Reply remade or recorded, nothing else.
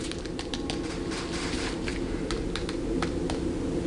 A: recorded